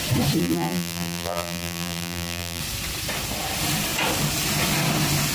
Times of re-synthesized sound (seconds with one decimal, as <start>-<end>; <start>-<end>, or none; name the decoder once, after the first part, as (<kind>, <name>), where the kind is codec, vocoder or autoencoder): 0.4-2.6 (vocoder, BigVGAN v2)